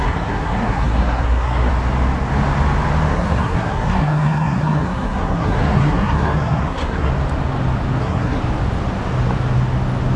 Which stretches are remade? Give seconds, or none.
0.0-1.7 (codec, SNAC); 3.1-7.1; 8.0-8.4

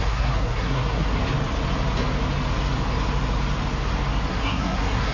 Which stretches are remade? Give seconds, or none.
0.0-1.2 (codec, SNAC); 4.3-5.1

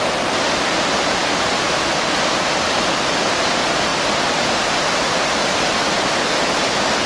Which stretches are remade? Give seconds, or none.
none

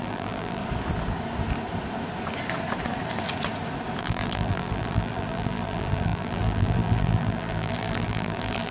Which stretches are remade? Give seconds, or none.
0.0-0.6 (vocoder, BigVGAN v2); 4.0-8.7

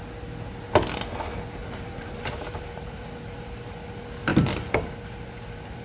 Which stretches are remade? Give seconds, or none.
1.6-3.1 (vocoder, BigVGAN v2)

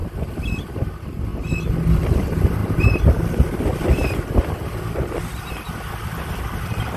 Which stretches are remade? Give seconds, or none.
0.6-1.3 (vocoder, BigVGAN v2); 2.0-7.0

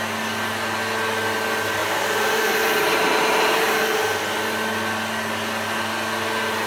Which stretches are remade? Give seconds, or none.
1.8-3.7 (vocoder, BigVGAN v2)

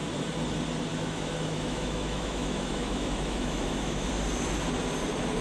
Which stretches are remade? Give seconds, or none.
0.9-4.1 (autoencoder, DAC-VAE)